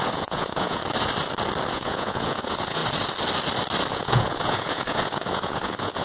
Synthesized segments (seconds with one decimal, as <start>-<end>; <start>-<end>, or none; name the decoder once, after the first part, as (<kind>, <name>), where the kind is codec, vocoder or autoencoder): 0.0-0.8 (vocoder, Vocos); 1.7-2.8; 3.9-6.0